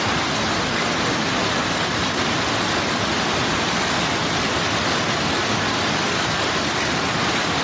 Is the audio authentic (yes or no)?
yes